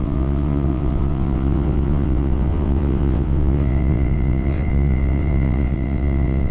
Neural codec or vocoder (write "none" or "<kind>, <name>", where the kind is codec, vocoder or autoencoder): vocoder, WaveNeXt